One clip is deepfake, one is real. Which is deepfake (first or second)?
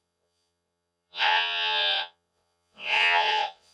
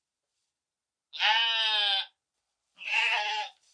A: first